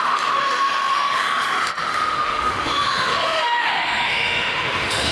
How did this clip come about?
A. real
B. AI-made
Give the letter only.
B